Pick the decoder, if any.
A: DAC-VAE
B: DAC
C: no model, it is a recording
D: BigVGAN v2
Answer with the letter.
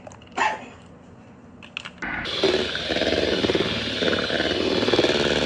C